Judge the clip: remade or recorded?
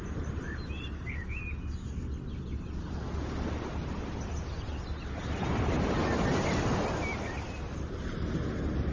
recorded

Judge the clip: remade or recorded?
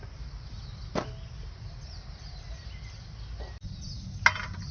recorded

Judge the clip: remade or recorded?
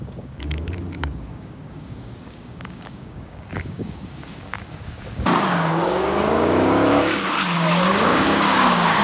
remade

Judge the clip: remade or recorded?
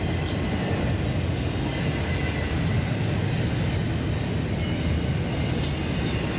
recorded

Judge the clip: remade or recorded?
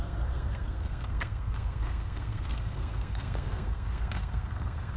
remade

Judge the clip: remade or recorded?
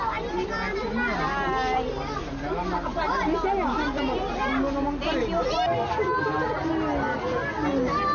recorded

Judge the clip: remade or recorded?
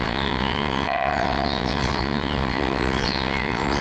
remade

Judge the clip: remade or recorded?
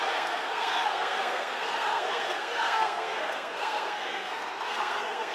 remade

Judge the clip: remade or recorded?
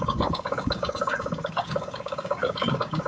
remade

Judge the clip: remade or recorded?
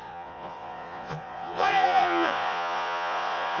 remade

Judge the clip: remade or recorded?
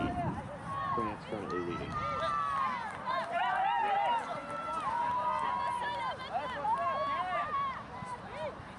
recorded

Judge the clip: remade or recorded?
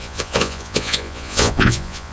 remade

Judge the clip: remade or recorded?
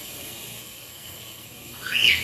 remade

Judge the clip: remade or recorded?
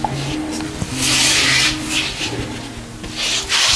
recorded